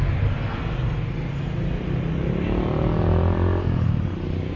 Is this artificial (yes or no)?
no